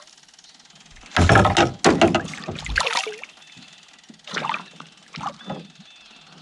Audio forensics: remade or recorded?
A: recorded